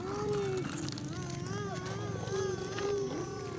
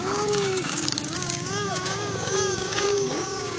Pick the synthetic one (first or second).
second